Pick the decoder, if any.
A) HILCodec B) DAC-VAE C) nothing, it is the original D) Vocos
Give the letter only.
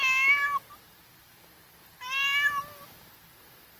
C